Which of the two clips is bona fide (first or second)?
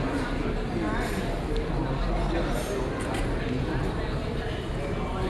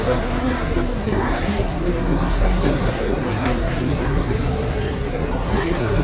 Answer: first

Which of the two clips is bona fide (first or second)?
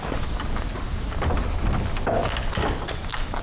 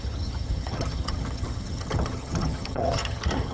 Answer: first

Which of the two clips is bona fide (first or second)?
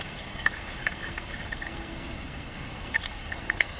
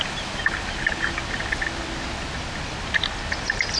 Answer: second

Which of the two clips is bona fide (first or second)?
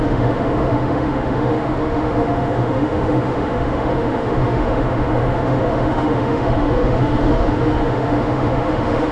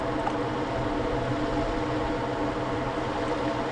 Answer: second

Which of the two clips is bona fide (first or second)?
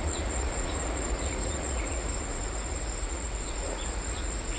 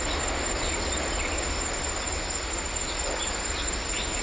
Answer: second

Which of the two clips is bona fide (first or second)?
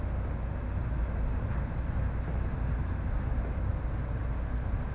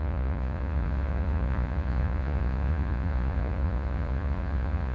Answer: first